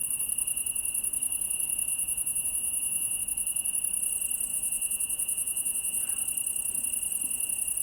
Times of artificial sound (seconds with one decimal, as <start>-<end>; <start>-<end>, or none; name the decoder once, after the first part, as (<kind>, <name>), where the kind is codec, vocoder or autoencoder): 1.9-3.2 (vocoder, Vocos); 4.5-6.0